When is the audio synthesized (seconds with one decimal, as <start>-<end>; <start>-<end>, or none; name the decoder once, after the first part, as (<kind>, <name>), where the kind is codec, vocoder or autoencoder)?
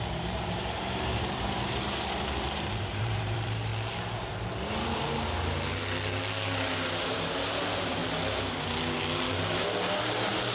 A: 0.0-3.7 (vocoder, BigVGAN v2); 7.0-8.0; 9.3-10.5